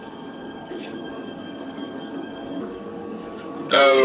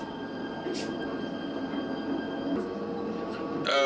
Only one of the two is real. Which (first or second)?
second